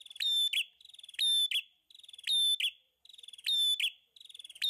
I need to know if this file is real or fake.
real